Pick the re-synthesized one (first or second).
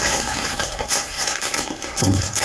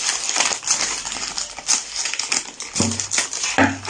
first